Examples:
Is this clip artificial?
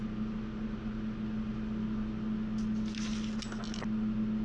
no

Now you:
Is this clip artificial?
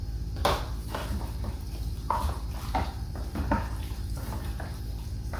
yes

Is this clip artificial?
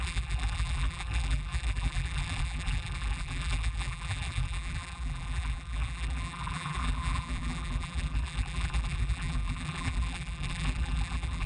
yes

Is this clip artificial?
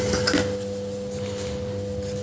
no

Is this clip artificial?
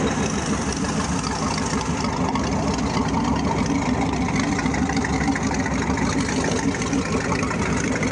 no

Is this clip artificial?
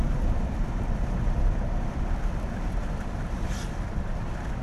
no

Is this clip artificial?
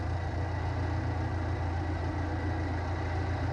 no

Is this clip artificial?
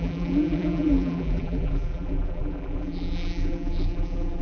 yes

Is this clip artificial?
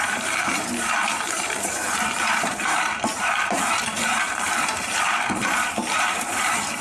yes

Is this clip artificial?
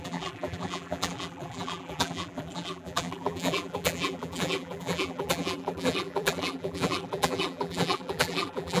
yes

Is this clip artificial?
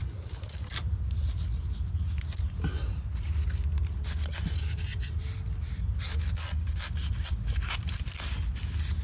no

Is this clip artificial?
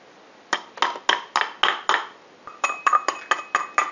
no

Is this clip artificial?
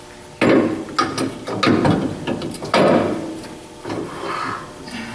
no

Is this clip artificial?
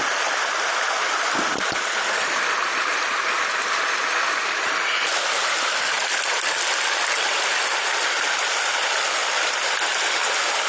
no